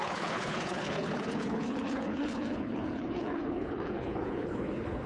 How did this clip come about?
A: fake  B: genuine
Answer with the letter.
A